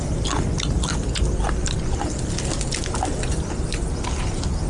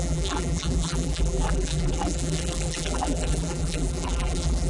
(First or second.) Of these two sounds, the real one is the first